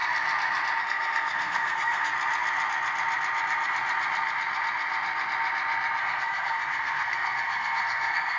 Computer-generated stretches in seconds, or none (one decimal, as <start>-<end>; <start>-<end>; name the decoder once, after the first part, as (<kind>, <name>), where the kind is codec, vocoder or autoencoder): 0.8-2.1 (codec, SNAC); 6.0-8.4